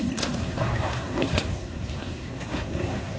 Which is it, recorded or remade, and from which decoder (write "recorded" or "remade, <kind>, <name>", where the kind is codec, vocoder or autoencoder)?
remade, codec, SNAC